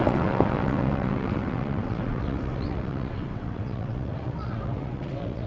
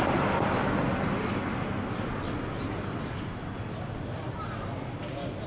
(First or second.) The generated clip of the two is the first